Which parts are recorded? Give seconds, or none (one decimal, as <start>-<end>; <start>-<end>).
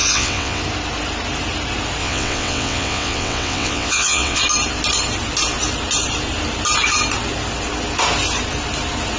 0.6-2.0; 4.4-9.2